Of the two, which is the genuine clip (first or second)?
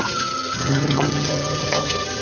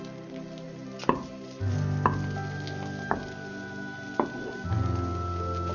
second